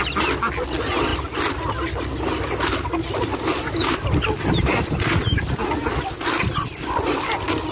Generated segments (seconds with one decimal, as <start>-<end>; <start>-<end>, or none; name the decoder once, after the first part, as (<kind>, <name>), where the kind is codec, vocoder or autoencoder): none